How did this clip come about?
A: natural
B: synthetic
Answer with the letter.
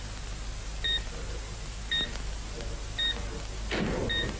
A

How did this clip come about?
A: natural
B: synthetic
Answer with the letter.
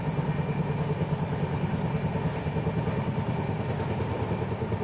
A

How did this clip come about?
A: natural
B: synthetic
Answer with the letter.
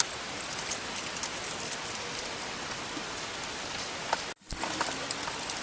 A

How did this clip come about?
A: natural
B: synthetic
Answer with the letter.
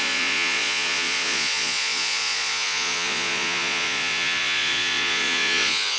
B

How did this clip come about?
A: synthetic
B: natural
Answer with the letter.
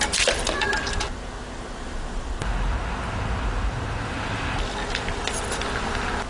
B